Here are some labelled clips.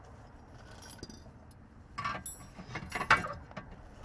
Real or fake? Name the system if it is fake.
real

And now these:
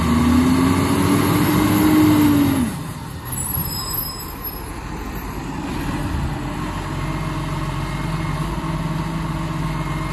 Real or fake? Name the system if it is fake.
real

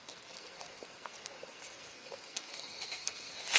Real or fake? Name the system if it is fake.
fake, codec, SNAC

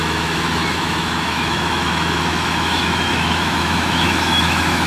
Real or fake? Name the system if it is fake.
fake, autoencoder, DAC-VAE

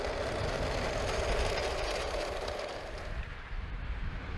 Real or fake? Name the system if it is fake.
fake, vocoder, BigVGAN v2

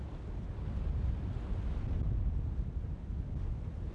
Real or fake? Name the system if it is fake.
real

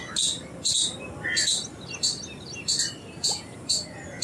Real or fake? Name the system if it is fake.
real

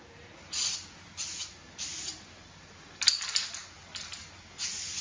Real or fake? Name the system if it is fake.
real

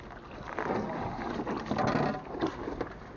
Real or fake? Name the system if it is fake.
real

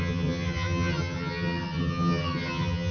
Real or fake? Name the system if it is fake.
fake, vocoder, HiFi-GAN